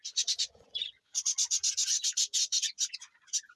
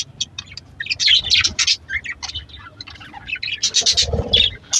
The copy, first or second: first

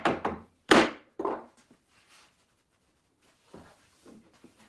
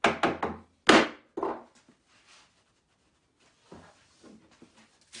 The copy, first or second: first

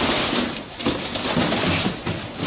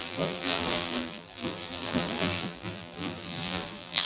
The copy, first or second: second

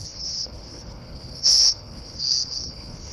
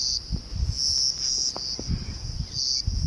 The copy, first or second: first